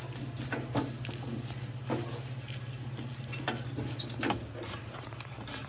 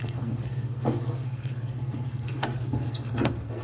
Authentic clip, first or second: first